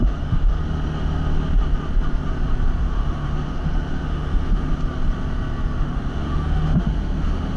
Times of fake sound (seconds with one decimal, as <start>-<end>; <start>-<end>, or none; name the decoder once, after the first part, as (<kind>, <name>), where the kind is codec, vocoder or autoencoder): 0.0-0.6 (autoencoder, DAC-VAE); 2.8-4.7; 5.8-7.6